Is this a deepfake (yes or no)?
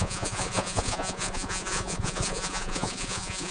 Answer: yes